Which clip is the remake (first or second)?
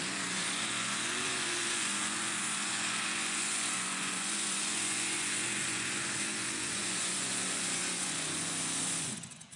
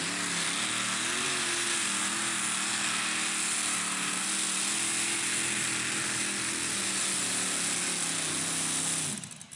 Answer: first